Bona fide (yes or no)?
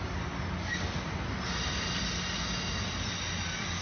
yes